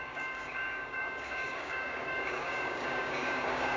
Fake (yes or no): yes